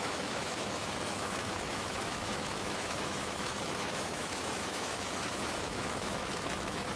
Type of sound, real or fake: fake